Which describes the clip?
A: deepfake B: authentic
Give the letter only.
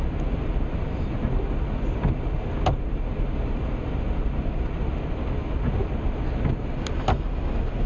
B